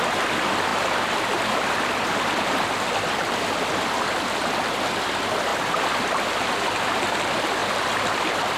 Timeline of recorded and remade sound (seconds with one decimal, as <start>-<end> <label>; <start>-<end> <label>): 0.0-0.7 recorded; 0.7-3.4 remade; 3.4-5.5 recorded; 5.5-6.6 remade; 6.6-7.6 recorded; 7.6-8.6 remade